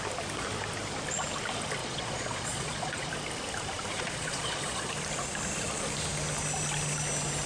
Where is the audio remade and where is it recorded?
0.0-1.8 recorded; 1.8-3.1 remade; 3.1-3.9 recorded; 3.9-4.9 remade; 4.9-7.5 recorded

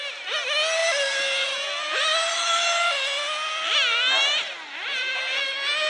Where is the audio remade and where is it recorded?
0.0-5.9 recorded

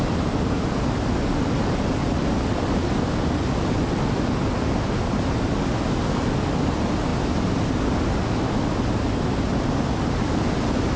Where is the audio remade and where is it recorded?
0.0-11.0 recorded

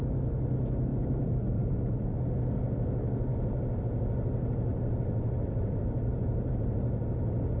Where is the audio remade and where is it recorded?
0.0-0.9 recorded; 0.9-1.9 remade; 1.9-3.3 recorded; 3.3-3.8 remade; 3.8-4.7 recorded; 4.7-6.5 remade; 6.5-7.6 recorded

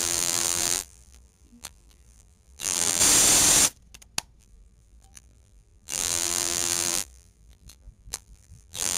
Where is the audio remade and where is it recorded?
0.0-3.0 remade; 3.0-4.4 recorded; 4.4-9.0 remade

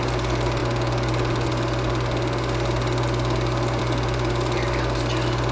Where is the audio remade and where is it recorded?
0.0-5.5 recorded

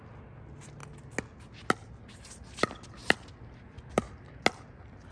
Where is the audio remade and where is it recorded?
0.0-5.1 recorded

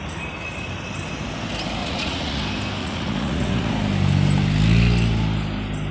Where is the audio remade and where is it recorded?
0.0-1.8 recorded; 1.8-2.4 remade; 2.4-2.8 recorded; 2.8-3.7 remade; 3.7-5.9 recorded